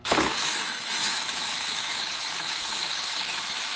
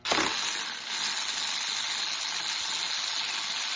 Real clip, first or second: second